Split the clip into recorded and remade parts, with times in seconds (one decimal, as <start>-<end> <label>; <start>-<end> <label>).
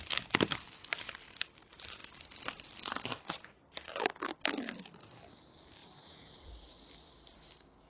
0.0-5.8 recorded; 5.8-6.8 remade; 6.8-7.9 recorded